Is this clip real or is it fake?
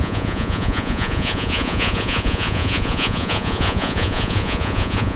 fake